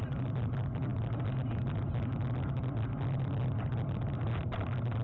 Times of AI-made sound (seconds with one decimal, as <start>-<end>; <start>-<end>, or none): none